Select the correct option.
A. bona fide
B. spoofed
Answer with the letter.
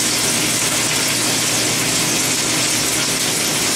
A